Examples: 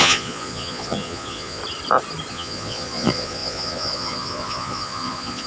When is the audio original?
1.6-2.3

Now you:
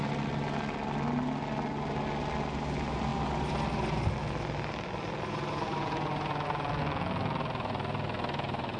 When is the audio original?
0.0-8.8

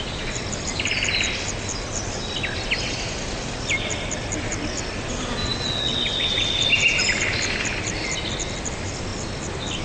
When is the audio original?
0.0-5.4; 6.0-9.8

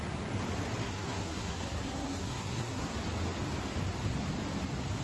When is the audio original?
0.0-0.8; 2.9-5.0

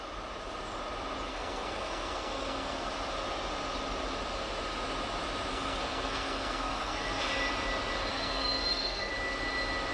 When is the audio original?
0.0-1.3; 2.9-5.5; 7.2-8.1; 9.1-9.9

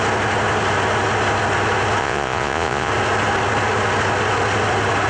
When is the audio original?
0.0-2.0; 2.9-5.1

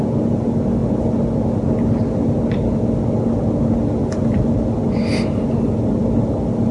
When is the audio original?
0.0-6.7